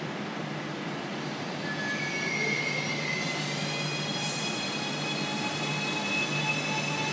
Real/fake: real